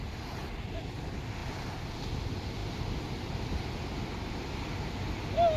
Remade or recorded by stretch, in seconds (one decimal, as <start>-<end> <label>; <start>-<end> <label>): 0.0-5.6 recorded